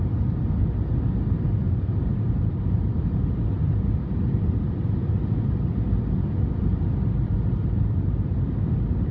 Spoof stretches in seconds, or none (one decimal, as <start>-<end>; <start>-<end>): 0.0-9.1

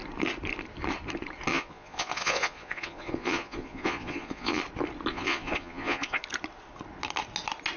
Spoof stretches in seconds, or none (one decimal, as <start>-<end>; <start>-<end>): 1.5-4.6; 5.1-6.2

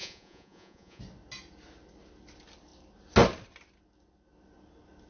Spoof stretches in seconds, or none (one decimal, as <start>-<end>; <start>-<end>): 0.0-1.0

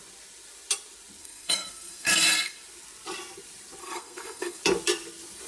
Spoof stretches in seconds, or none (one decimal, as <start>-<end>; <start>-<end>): 1.2-2.5; 3.8-4.6

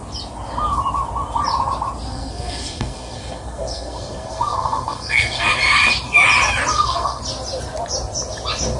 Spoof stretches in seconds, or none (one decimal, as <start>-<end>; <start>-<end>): 2.1-5.5; 6.7-7.2